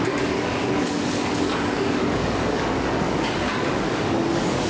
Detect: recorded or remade remade